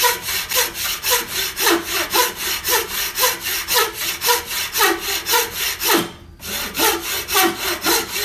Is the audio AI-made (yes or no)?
no